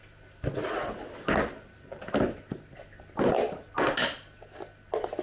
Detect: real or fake real